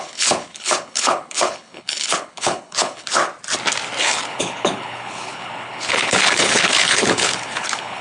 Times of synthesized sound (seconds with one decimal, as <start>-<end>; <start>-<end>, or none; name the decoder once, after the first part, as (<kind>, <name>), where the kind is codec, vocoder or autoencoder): 0.0-3.2 (codec, HILCodec); 4.0-8.0